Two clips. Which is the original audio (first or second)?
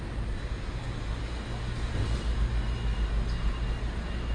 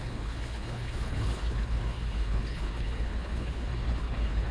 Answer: first